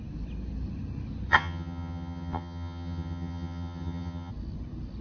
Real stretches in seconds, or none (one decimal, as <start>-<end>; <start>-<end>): 0.0-1.3; 4.3-5.0